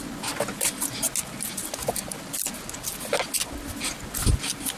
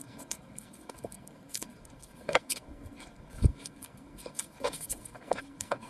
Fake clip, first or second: second